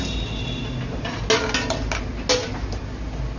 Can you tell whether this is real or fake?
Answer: real